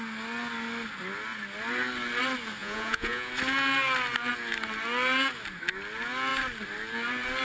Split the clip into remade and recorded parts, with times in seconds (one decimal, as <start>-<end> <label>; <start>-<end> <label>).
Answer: 0.0-2.6 recorded; 2.6-3.3 remade; 3.3-7.4 recorded